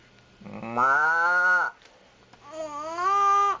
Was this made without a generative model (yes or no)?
yes